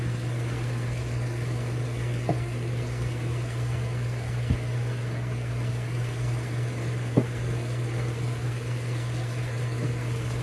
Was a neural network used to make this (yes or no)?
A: yes